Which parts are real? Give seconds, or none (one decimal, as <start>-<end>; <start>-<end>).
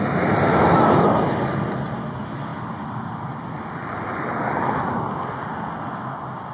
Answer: 0.0-6.5